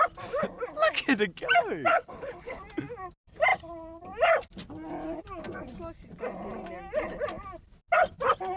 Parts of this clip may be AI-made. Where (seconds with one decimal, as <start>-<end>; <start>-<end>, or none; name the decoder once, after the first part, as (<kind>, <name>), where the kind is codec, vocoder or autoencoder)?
1.9-2.6 (codec, HILCodec)